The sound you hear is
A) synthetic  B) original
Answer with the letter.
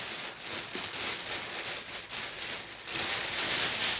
B